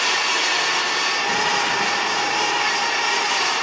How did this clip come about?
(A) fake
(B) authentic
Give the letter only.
A